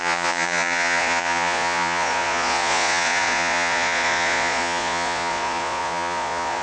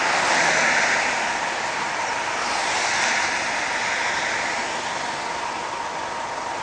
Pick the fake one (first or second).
first